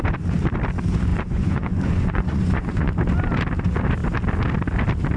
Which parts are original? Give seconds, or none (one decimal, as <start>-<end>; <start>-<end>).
0.0-1.1; 2.9-5.2

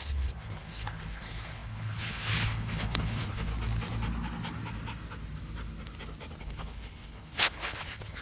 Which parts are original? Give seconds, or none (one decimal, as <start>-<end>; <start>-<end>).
3.5-6.4

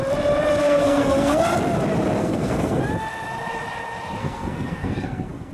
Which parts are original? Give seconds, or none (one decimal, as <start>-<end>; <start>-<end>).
0.0-0.6; 1.4-2.2; 2.8-4.2

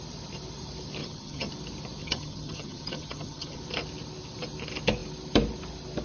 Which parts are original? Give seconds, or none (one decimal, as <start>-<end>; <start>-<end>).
0.0-1.0; 1.5-2.0; 3.6-6.0

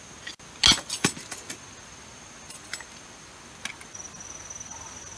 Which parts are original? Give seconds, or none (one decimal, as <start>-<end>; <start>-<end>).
0.0-5.2

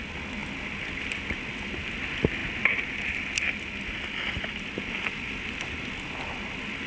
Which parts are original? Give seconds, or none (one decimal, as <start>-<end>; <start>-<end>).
0.0-6.9

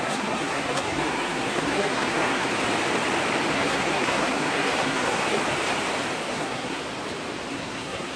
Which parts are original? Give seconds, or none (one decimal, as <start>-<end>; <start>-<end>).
2.5-3.5; 5.4-6.3; 6.8-7.5